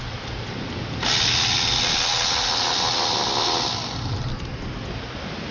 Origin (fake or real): real